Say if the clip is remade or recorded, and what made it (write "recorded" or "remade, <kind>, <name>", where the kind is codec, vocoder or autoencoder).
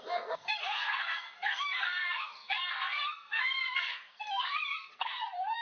remade, codec, SNAC